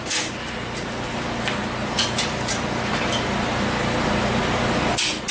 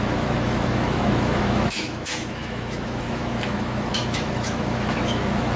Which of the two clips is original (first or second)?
first